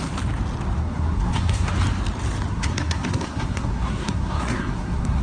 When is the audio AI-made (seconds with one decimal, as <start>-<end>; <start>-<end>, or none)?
0.8-1.7; 2.5-5.2